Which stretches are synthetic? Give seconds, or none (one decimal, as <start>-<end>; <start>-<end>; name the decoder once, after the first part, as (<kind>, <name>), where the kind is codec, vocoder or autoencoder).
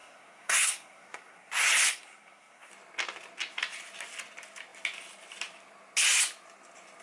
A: 0.0-1.5 (codec, SNAC); 1.9-2.7